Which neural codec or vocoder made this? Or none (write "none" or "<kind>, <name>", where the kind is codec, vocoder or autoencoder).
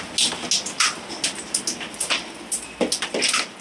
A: none